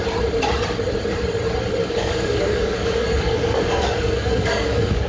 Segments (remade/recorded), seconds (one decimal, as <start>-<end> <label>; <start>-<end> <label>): 0.0-1.8 recorded; 1.8-5.1 remade